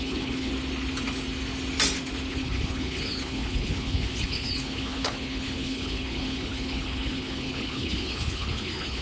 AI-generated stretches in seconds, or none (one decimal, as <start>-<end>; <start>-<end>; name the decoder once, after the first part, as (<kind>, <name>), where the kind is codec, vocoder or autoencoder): 0.0-0.5 (codec, HILCodec); 2.3-9.0